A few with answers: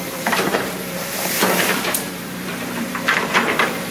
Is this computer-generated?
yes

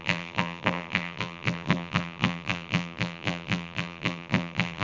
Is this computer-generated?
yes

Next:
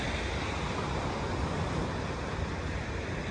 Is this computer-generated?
no